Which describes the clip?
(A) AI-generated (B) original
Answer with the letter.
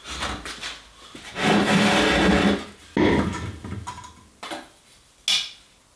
B